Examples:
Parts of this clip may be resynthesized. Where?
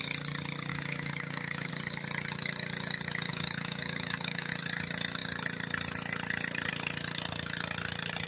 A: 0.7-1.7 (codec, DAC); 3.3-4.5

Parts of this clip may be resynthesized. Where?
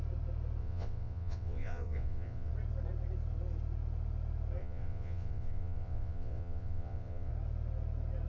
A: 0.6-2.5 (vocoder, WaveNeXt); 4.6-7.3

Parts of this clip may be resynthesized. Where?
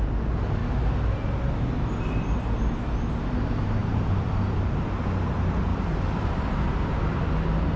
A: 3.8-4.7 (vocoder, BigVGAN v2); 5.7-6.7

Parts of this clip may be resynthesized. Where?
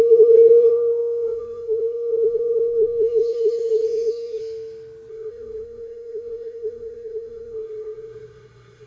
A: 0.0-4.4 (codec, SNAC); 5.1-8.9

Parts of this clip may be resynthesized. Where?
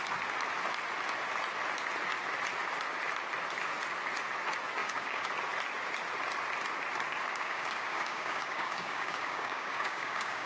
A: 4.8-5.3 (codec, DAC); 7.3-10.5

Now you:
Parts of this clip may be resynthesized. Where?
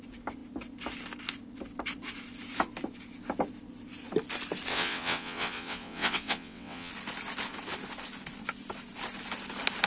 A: 4.7-6.9 (vocoder, WaveNeXt)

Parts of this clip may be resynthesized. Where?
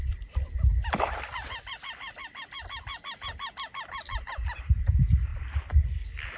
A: none